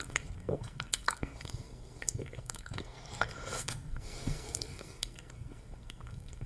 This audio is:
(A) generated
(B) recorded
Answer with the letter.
A